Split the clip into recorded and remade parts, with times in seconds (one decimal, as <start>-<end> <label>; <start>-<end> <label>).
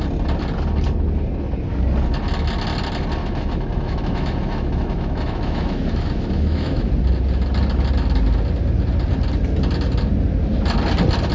0.0-3.2 recorded; 3.2-6.9 remade; 6.9-11.3 recorded